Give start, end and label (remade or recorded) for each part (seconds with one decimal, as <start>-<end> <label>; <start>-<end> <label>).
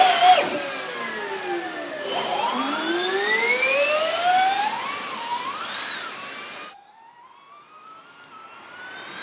0.0-9.2 recorded